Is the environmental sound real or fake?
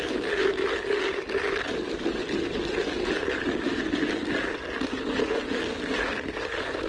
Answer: real